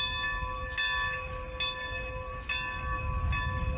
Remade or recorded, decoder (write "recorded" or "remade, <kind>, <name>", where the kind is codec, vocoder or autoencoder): recorded